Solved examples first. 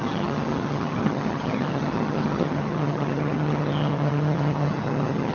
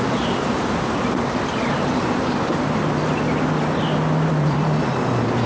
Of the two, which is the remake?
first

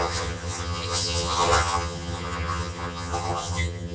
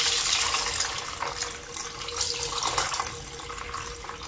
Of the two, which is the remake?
first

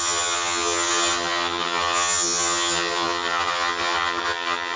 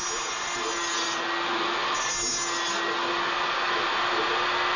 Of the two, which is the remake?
first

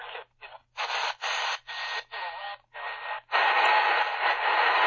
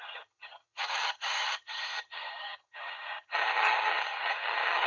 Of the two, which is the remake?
second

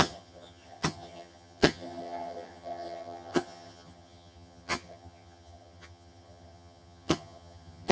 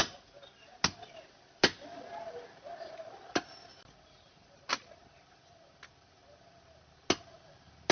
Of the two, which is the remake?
first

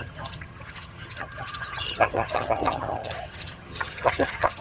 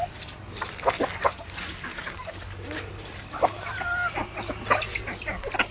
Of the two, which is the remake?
first